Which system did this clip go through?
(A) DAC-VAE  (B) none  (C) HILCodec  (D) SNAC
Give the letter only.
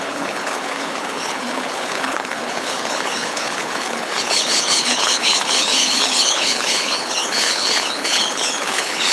C